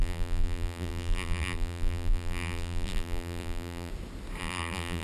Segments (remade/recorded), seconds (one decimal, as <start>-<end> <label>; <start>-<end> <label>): 0.0-3.9 remade; 3.9-4.4 recorded; 4.4-5.0 remade